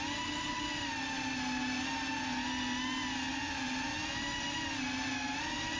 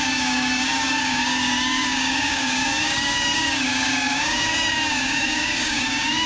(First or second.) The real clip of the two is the first